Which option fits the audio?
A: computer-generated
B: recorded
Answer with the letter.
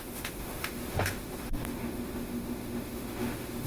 A